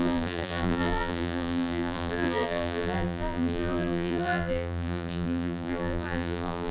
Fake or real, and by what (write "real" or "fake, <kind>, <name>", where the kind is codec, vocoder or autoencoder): fake, vocoder, BigVGAN v2